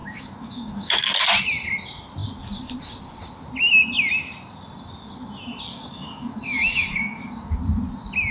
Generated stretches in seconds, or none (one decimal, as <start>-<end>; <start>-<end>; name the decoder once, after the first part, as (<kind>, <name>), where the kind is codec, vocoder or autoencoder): 0.0-1.2 (codec, DAC); 5.7-7.5